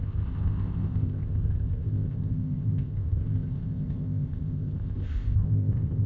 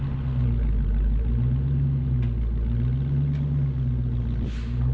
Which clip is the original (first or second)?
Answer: second